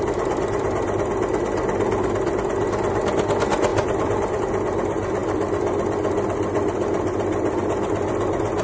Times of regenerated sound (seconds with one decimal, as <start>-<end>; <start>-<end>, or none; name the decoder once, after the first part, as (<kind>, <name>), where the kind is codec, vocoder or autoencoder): 3.7-4.4 (vocoder, BigVGAN v2)